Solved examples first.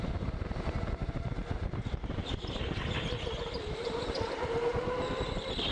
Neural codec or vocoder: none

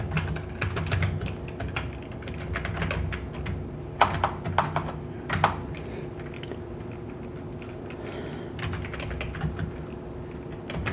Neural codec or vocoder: none